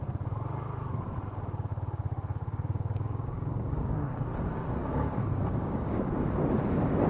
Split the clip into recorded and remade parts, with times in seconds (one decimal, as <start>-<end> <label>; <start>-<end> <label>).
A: 0.0-1.7 recorded; 1.7-4.1 remade; 4.1-4.8 recorded; 4.8-6.2 remade; 6.2-7.1 recorded